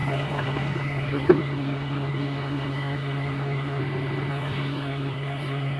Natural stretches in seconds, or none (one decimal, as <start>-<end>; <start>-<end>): 3.8-4.3